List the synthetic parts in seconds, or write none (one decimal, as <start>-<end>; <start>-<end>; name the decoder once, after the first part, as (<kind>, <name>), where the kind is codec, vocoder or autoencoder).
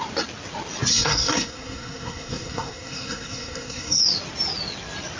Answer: 0.9-4.0 (codec, SNAC)